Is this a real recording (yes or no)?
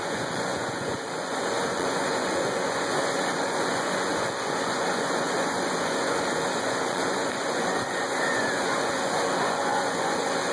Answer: no